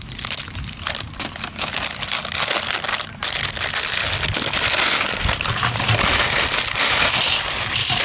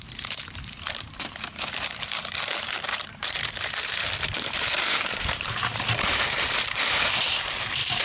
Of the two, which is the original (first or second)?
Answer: first